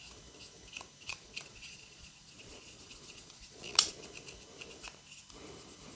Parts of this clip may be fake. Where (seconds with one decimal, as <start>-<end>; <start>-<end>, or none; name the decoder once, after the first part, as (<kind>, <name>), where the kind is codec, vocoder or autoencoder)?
1.1-3.9 (vocoder, Vocos)